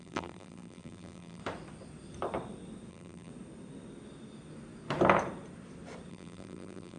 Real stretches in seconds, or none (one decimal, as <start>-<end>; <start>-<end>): 1.4-2.9; 3.3-6.1